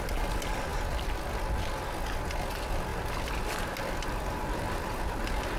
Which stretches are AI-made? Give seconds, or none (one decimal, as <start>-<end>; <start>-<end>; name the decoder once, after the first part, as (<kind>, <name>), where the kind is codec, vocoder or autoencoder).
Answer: none